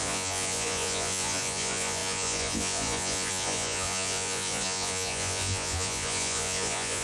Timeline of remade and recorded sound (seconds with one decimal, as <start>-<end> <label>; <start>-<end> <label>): 0.0-7.0 remade